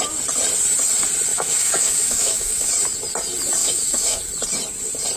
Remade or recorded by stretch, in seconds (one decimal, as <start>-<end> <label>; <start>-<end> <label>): 0.0-1.3 recorded; 1.3-2.7 remade; 2.7-3.6 recorded; 3.6-4.2 remade; 4.2-5.2 recorded